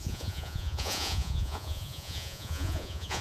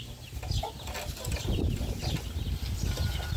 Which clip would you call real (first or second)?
second